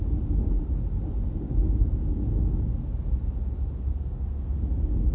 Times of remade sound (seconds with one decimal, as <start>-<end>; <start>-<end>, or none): 3.9-4.6